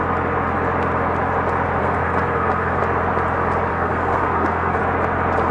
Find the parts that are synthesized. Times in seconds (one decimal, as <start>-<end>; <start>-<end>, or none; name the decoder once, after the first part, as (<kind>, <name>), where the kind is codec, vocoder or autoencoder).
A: 1.8-2.8 (codec, SNAC); 3.7-4.8